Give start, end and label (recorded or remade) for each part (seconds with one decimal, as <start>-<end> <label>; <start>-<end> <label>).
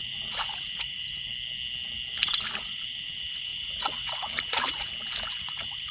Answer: 0.0-1.3 remade; 1.3-2.6 recorded; 2.6-4.9 remade; 4.9-5.4 recorded; 5.4-5.9 remade